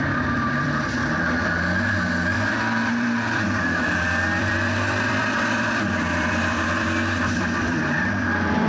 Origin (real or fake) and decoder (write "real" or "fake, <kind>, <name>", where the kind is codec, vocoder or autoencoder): fake, vocoder, BigVGAN v2